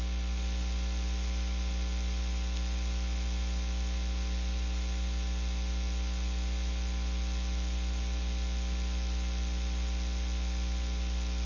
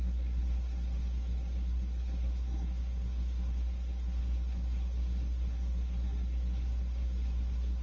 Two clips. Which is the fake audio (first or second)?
second